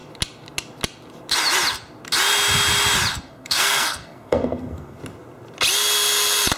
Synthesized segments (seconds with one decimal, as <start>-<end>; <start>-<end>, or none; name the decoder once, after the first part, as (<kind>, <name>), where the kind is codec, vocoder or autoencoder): 3.1-5.0 (codec, SNAC)